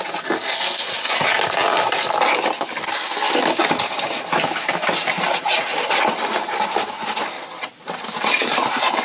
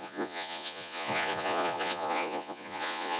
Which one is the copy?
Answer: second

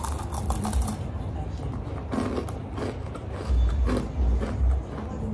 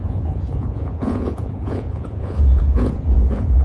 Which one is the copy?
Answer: second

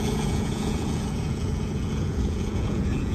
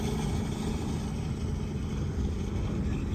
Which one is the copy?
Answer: first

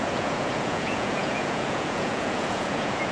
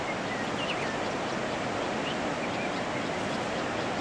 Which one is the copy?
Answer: first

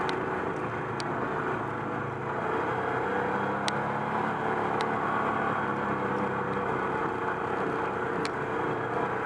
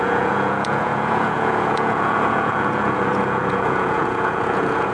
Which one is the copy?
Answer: second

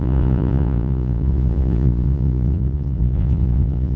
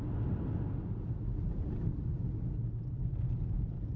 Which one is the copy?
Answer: first